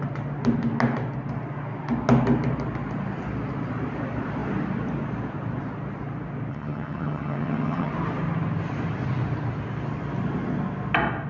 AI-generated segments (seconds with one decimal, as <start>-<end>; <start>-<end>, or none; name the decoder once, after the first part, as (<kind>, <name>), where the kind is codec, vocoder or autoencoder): 6.5-7.9 (vocoder, HiFi-GAN)